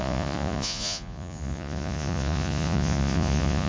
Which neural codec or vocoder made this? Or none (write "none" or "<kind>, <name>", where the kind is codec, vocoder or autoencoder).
vocoder, Vocos